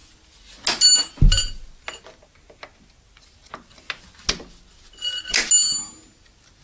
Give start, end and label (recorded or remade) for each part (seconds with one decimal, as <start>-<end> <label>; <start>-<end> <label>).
0.0-6.6 recorded

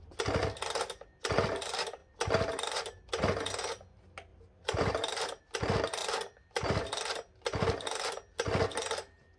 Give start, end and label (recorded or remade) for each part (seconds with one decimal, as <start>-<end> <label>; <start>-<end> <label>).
0.0-4.3 recorded; 4.3-5.4 remade; 5.4-6.0 recorded; 6.0-7.1 remade; 7.1-9.4 recorded

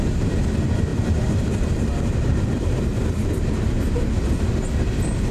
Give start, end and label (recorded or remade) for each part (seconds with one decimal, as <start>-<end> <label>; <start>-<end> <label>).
0.0-0.9 recorded; 0.9-4.1 remade; 4.1-5.3 recorded

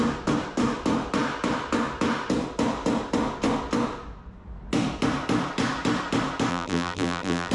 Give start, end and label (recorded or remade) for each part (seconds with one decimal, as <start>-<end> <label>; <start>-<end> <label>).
0.0-6.5 recorded; 6.5-7.5 remade

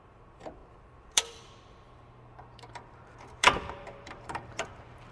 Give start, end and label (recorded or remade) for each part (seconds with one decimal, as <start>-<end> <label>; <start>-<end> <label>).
0.0-5.1 remade

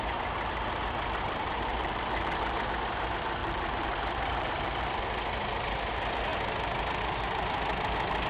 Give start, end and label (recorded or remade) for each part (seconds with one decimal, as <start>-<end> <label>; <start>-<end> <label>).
0.0-1.7 recorded; 1.7-2.6 remade; 2.6-3.4 recorded; 3.4-5.0 remade; 5.0-8.3 recorded